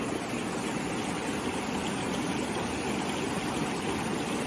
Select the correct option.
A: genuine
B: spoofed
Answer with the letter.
A